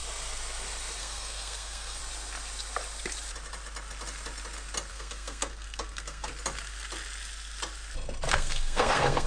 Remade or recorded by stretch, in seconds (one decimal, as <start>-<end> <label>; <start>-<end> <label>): 0.0-1.0 recorded; 1.0-2.0 remade; 2.0-4.9 recorded; 4.9-6.3 remade; 6.3-8.3 recorded; 8.3-9.3 remade